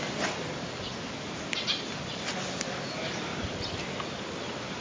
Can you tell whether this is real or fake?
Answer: real